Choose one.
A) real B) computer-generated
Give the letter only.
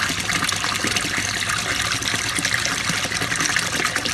A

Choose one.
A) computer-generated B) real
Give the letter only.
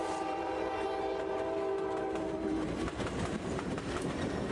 A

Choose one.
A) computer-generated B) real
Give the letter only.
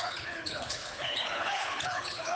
A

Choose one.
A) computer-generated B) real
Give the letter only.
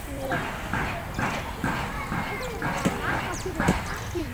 A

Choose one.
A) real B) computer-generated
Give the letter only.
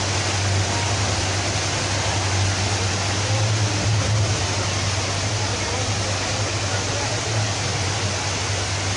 A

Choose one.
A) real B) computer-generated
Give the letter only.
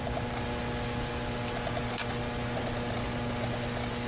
A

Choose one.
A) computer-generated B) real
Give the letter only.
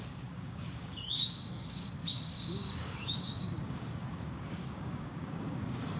A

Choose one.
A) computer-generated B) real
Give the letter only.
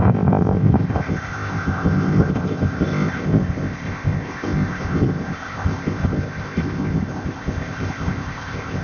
A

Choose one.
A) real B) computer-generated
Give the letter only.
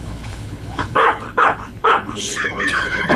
B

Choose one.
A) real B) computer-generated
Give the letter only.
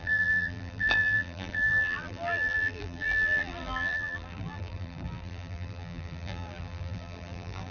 B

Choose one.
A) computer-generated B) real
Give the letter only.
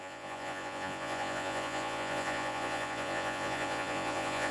A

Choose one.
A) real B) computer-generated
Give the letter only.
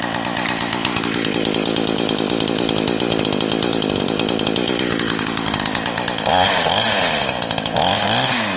A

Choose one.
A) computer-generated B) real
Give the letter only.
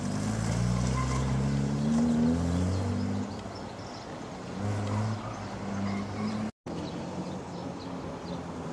B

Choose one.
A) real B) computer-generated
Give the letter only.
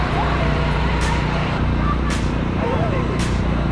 B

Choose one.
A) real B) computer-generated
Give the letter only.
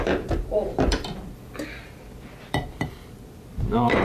B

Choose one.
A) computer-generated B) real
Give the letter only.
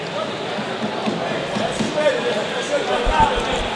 B